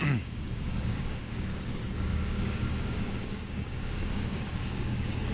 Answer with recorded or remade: remade